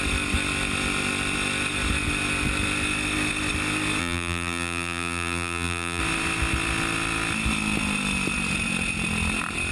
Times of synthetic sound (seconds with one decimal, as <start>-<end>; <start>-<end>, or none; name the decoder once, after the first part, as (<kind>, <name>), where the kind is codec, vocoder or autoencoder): 4.0-6.0 (vocoder, BigVGAN v2)